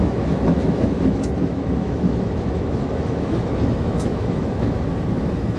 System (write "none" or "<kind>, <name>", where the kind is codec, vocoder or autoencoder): autoencoder, DAC-VAE